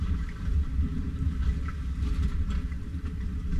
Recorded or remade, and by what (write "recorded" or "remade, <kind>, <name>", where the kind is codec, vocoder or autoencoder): remade, vocoder, BigVGAN v2